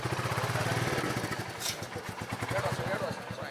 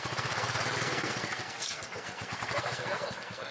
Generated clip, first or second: second